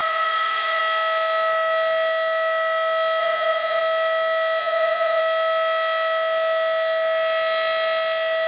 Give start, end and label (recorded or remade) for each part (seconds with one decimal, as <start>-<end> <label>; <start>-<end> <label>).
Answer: 0.0-0.8 remade; 0.8-3.2 recorded; 3.2-3.8 remade; 3.8-4.6 recorded; 4.6-5.2 remade; 5.2-8.5 recorded